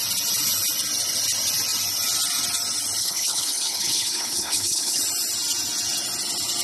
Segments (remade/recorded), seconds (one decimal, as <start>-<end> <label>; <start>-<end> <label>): 0.0-3.0 recorded; 3.0-5.0 remade; 5.0-6.6 recorded